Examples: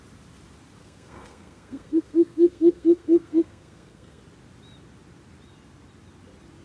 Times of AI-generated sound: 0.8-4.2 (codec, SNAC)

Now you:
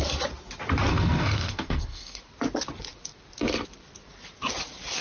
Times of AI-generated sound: 0.9-2.2 (codec, SNAC)

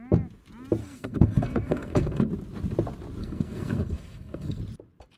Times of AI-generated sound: 0.8-2.3 (codec, SNAC); 3.2-4.6